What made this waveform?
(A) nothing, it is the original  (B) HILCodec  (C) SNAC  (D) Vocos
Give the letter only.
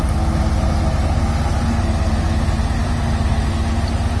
A